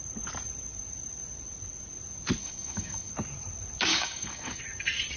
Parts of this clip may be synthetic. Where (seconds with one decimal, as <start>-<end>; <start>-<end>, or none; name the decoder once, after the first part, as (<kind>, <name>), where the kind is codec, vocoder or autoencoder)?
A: 2.4-3.1 (codec, DAC); 3.9-4.6